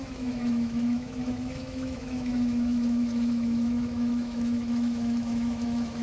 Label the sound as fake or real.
fake